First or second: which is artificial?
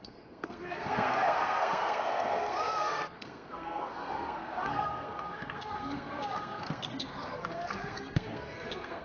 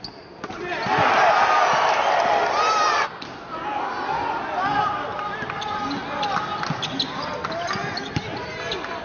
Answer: first